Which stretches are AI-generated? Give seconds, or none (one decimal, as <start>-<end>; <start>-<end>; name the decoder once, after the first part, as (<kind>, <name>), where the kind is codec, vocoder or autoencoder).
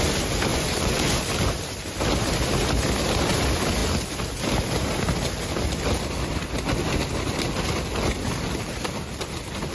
0.5-1.1 (vocoder, Vocos)